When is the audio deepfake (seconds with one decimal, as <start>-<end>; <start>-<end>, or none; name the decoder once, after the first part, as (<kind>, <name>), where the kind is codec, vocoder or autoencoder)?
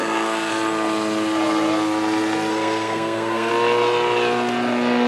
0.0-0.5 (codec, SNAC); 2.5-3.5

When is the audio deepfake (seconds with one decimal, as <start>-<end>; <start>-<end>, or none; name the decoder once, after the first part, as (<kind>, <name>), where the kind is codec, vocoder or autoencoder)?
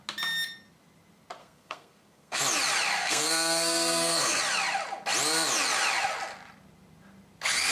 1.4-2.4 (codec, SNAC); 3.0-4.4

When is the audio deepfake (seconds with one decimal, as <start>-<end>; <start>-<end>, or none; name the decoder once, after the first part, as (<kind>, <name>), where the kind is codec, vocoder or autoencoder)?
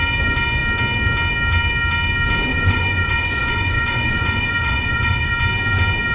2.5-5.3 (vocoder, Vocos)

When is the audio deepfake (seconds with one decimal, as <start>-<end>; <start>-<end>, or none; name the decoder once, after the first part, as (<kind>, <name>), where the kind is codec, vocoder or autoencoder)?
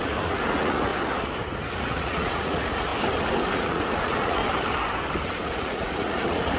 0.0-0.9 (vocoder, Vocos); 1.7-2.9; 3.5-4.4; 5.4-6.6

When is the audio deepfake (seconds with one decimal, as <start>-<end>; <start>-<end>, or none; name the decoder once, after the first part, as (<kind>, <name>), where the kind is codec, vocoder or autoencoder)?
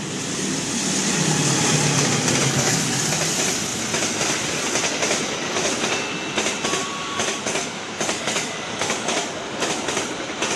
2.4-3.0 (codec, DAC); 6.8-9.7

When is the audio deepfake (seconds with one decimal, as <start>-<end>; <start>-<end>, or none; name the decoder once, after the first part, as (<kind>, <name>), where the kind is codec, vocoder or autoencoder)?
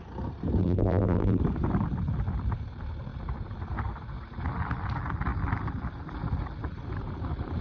0.6-1.4 (vocoder, BigVGAN v2)